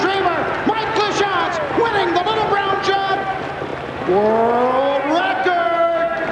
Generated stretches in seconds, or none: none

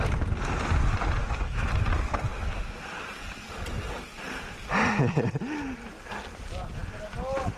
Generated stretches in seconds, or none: 1.2-1.7 (autoencoder, DAC-VAE)

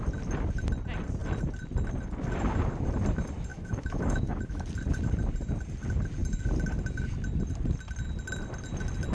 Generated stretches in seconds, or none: 3.5-4.7 (autoencoder, DAC-VAE)

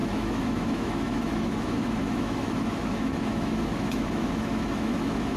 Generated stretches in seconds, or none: 0.0-5.4 (autoencoder, DAC-VAE)